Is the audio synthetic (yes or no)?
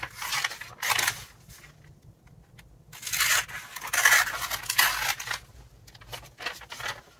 no